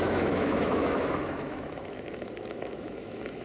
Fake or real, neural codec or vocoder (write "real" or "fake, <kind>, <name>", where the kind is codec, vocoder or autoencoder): fake, autoencoder, DAC-VAE